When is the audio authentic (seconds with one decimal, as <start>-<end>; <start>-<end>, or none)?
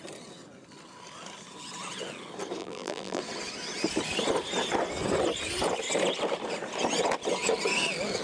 0.0-2.6; 3.2-8.2